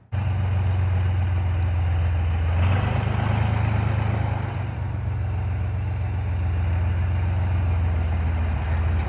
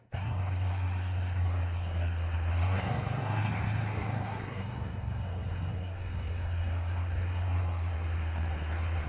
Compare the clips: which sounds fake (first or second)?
second